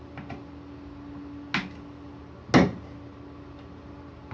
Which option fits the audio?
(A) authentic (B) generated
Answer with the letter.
A